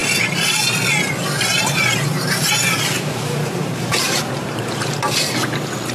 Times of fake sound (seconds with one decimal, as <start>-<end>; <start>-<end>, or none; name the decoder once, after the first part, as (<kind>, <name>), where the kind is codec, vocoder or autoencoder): 0.0-0.6 (vocoder, BigVGAN v2); 1.5-5.0